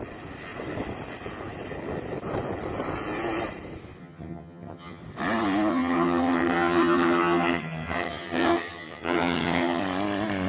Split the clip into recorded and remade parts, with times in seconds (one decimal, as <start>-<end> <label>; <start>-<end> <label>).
0.0-4.0 recorded; 4.0-5.0 remade; 5.0-5.7 recorded; 5.7-9.8 remade; 9.8-10.5 recorded